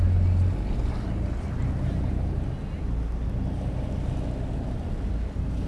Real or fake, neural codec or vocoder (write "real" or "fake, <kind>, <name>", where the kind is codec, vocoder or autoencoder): real